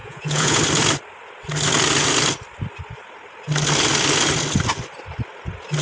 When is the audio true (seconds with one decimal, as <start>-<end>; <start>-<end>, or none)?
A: 0.6-5.8